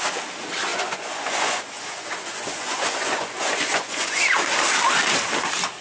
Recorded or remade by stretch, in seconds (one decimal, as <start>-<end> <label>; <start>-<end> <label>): 0.0-0.7 recorded; 0.7-4.2 remade; 4.2-5.8 recorded